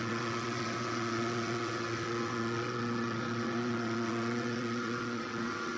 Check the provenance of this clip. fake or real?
fake